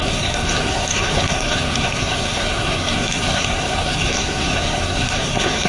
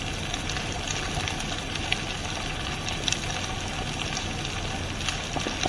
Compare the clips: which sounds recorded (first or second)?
second